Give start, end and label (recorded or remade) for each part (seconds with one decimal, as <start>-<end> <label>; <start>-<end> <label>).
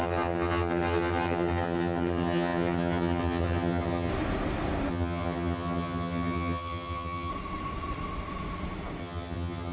0.0-4.1 remade; 4.1-4.9 recorded; 4.9-7.3 remade; 7.3-9.0 recorded; 9.0-9.7 remade